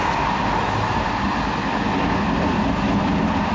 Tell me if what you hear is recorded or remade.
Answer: recorded